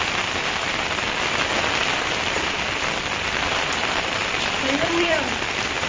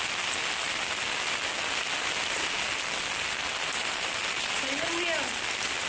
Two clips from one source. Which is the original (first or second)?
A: second